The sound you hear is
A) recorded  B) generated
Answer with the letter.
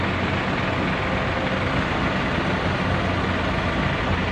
A